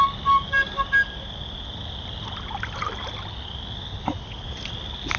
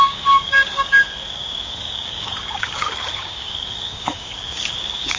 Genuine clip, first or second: first